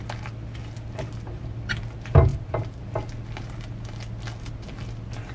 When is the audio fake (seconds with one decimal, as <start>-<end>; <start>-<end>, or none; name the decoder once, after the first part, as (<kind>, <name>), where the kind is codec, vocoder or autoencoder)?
none